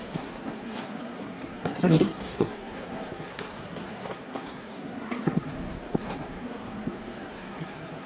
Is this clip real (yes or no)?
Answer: no